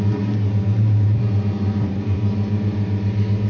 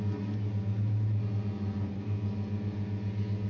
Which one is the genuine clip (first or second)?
second